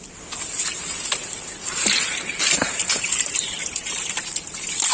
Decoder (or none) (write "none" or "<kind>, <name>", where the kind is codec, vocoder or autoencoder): vocoder, BigVGAN v2